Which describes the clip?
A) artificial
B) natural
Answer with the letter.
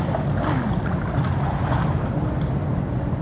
B